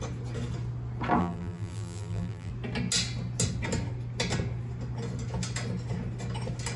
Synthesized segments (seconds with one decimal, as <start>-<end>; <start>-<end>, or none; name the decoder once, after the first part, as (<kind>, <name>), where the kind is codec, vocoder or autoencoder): 1.2-2.5 (vocoder, BigVGAN v2)